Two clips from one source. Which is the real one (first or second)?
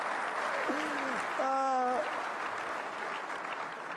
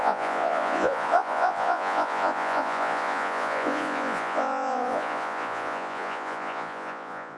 first